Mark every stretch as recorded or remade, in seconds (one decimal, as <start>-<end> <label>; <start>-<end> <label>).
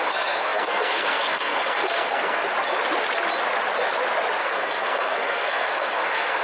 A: 0.0-2.4 remade; 2.4-4.4 recorded; 4.4-6.4 remade